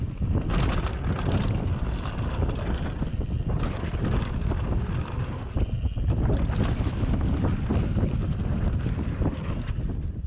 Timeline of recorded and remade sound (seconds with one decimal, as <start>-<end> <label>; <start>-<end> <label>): 0.0-10.3 recorded